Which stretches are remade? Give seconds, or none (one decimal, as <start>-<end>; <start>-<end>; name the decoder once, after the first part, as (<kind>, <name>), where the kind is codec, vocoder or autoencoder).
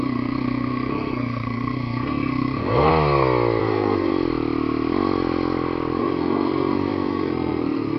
0.0-2.9 (codec, SNAC); 3.6-4.1; 6.0-8.0